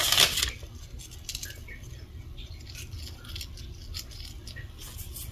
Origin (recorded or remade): recorded